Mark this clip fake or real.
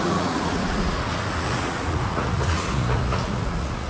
fake